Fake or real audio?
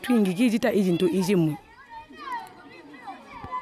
real